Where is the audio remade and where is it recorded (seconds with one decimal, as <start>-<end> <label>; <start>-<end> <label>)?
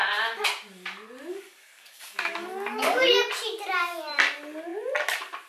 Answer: 0.0-1.3 recorded; 1.3-3.1 remade; 3.1-5.5 recorded